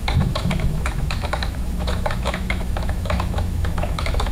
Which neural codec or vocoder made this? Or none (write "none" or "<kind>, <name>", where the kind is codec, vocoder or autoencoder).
autoencoder, DAC-VAE